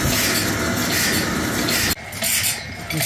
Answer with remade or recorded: recorded